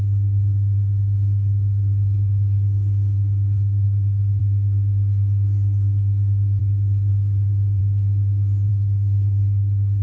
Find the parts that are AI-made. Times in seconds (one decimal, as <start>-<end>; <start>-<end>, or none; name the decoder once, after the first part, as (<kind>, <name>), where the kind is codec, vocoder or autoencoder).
0.0-4.4 (codec, HILCodec); 6.6-7.8; 8.7-10.0

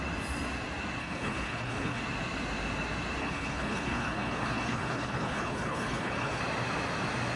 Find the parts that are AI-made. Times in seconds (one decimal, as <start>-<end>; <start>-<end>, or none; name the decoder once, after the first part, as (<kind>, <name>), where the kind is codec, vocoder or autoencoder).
1.0-2.0 (codec, HILCodec); 3.2-6.4

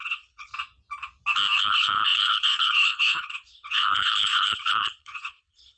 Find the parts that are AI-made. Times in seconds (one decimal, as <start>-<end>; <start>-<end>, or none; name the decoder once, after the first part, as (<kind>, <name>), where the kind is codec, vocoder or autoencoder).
0.0-0.5 (codec, HILCodec); 1.6-5.8

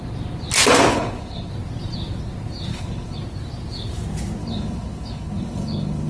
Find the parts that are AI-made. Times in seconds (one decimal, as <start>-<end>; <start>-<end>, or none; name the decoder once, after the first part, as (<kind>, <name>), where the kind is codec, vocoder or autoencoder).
0.9-1.5 (codec, HILCodec); 2.7-3.2; 4.4-6.1

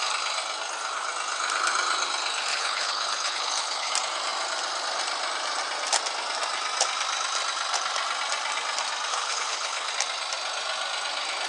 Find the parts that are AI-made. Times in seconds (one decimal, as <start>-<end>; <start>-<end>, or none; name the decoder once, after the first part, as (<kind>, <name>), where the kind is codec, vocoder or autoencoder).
2.5-3.9 (codec, HILCodec); 9.1-9.9